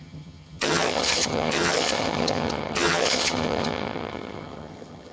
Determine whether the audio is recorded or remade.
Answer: remade